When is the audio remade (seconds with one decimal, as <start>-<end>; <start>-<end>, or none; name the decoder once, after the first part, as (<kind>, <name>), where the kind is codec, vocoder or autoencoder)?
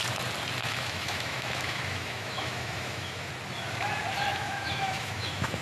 0.6-3.3 (autoencoder, DAC-VAE); 4.3-5.6